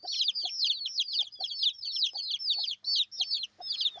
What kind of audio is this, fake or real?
real